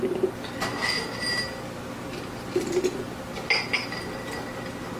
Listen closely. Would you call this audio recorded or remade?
recorded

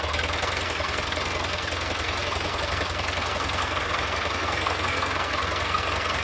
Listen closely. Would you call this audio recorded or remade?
remade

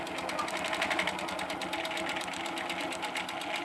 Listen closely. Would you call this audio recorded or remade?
recorded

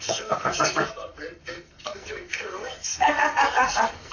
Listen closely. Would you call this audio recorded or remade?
remade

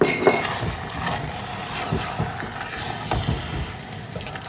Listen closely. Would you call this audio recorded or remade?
recorded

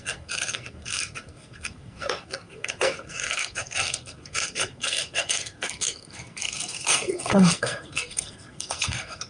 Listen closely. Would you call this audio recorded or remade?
remade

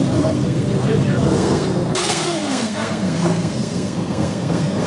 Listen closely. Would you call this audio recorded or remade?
remade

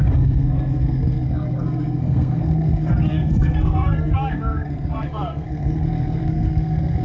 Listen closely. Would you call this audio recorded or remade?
remade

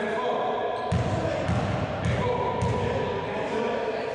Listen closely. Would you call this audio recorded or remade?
recorded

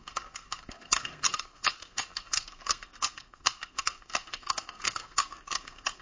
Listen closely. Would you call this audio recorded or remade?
remade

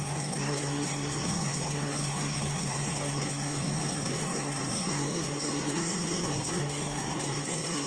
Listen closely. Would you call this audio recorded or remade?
remade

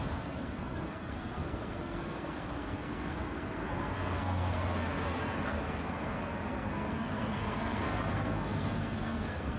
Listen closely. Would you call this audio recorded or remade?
remade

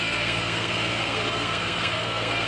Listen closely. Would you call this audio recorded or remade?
remade